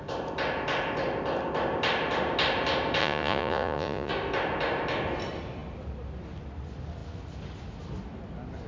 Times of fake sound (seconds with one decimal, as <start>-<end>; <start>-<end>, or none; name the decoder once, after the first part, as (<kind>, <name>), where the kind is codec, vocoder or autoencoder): 3.0-4.1 (vocoder, Vocos)